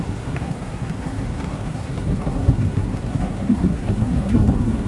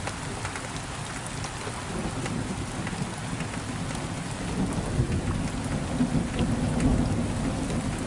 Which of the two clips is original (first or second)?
second